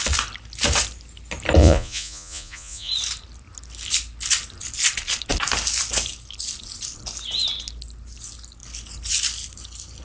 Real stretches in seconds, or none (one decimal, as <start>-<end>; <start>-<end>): 0.0-1.6; 2.9-10.0